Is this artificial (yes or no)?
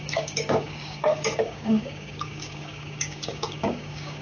yes